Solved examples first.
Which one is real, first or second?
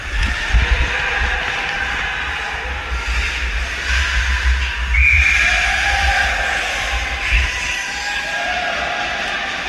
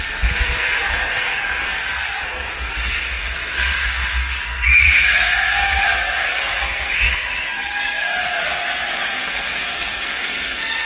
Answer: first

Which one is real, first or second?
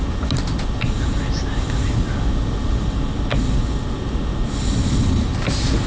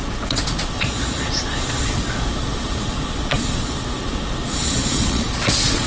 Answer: first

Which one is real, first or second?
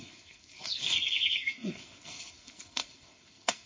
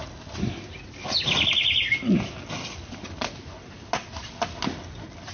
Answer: second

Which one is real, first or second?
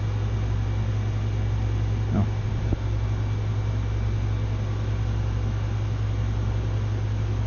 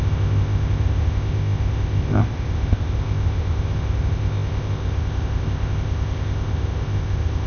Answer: first